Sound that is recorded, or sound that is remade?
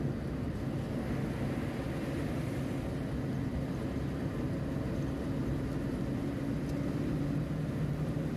recorded